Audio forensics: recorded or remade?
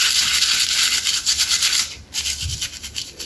recorded